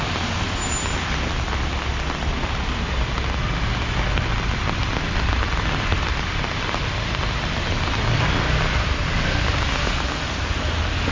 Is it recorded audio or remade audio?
recorded